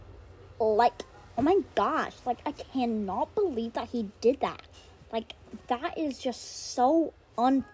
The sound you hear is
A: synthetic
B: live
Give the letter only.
B